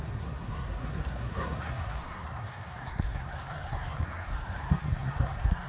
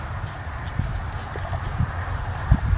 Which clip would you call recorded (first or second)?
second